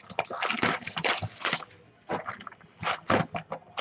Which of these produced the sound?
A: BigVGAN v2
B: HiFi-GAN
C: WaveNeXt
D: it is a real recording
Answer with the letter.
D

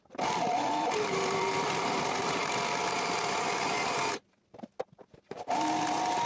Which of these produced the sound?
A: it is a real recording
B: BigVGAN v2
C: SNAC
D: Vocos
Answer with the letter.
A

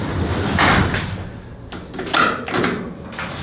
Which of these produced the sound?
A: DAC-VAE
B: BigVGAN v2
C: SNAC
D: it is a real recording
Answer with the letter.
D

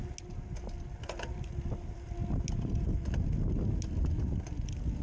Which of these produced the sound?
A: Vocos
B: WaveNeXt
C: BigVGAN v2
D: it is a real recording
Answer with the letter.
D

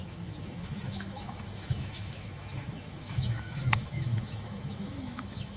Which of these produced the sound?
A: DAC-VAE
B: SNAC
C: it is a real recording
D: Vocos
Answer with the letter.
A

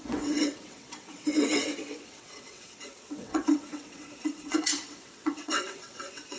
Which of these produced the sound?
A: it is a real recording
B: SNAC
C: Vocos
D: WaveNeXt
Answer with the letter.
D